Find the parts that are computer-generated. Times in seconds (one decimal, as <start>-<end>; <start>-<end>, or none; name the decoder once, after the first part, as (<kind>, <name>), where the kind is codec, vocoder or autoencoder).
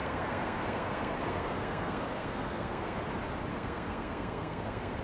0.0-3.0 (codec, SNAC); 3.5-5.0